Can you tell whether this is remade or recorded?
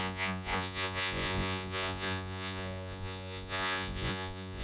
remade